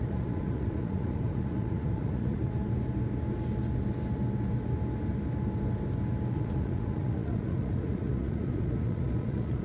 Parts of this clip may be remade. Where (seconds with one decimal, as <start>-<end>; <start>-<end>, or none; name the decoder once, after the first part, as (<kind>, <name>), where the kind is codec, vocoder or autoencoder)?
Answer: 0.0-2.6 (vocoder, Vocos); 6.3-9.6